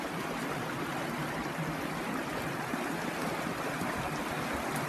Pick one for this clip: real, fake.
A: real